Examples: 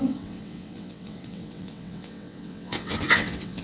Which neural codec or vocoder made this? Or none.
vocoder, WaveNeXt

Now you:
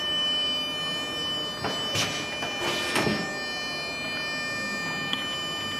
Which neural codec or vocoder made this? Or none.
none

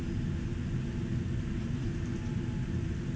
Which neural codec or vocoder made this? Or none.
none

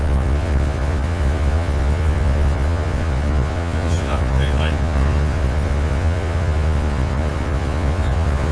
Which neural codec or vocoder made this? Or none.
vocoder, Vocos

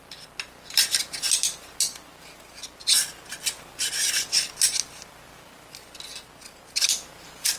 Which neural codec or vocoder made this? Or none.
none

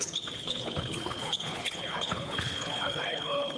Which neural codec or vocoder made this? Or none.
codec, HILCodec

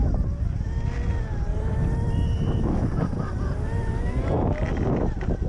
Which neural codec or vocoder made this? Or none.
none